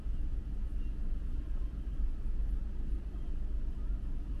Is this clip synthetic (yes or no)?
no